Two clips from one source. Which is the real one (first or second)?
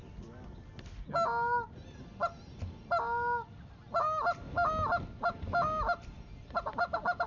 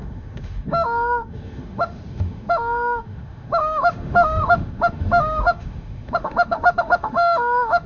first